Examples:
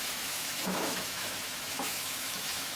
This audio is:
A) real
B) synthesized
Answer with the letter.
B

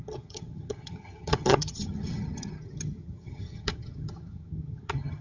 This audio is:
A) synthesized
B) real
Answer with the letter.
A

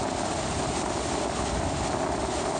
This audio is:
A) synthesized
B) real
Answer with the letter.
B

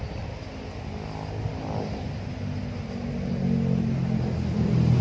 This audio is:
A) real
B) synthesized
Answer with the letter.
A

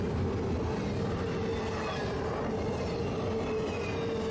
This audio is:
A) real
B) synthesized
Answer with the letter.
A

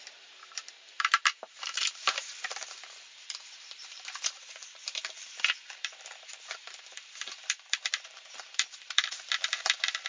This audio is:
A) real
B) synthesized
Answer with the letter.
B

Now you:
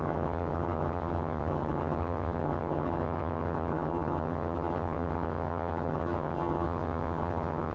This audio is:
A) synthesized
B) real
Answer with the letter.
A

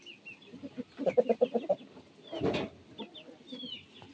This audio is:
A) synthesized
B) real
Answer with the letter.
B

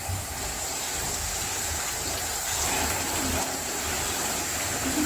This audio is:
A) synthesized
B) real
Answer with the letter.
A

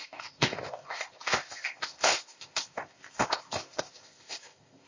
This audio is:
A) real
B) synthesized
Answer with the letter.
B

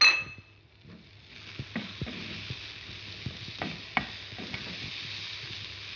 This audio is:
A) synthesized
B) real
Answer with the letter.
B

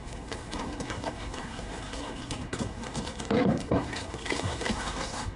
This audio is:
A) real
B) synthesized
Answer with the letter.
B